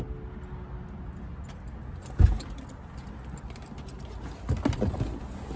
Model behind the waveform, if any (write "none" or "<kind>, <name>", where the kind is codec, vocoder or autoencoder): none